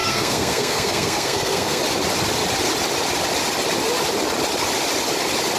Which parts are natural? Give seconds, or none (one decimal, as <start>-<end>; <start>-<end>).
1.8-5.6